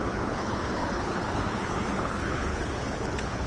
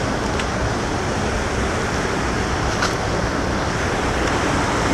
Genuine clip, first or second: second